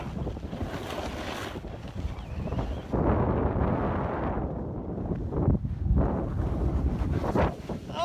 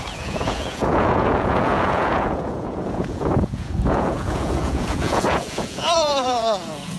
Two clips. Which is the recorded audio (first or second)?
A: first